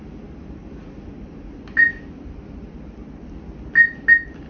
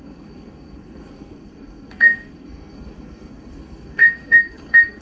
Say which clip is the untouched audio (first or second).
first